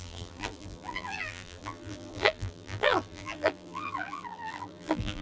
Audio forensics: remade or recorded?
remade